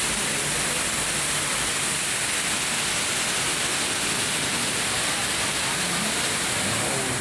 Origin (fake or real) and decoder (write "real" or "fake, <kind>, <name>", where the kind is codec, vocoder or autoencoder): real